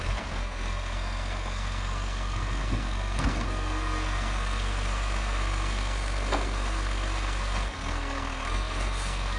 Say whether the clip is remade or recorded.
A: remade